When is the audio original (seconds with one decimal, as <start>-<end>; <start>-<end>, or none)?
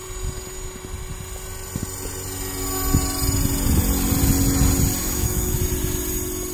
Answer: 0.0-5.0; 5.6-6.5